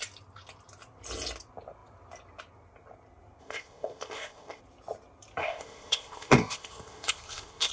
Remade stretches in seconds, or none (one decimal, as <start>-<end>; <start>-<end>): 3.4-4.6; 5.4-7.7